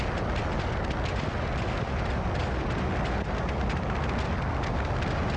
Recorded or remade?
recorded